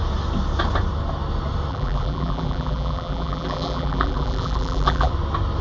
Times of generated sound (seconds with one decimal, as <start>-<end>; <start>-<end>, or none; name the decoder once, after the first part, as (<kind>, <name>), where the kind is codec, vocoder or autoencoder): 1.7-5.1 (vocoder, BigVGAN v2)